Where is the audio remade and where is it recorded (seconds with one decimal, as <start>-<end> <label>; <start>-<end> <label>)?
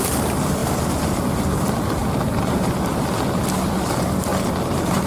0.0-5.1 recorded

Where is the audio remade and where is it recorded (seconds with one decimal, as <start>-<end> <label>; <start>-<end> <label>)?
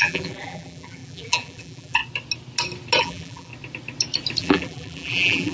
0.0-2.0 remade; 2.0-3.0 recorded; 3.0-3.5 remade; 3.5-4.4 recorded; 4.4-5.5 remade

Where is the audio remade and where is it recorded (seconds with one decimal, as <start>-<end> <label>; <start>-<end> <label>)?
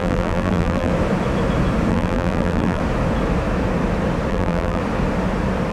0.0-0.9 remade; 0.9-1.9 recorded; 1.9-2.8 remade; 2.8-4.3 recorded; 4.3-4.8 remade; 4.8-5.7 recorded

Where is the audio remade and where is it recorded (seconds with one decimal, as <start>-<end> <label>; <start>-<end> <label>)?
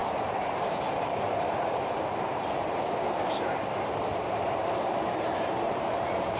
0.0-6.4 remade